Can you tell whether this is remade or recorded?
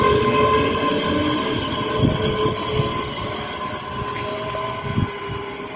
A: recorded